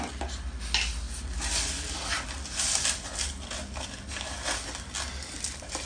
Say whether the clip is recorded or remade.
recorded